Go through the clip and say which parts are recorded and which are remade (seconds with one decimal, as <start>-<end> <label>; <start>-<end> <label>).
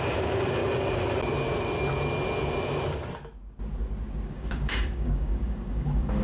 0.0-0.6 remade; 0.6-4.3 recorded; 4.3-6.2 remade